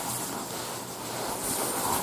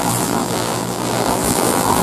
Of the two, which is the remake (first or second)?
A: second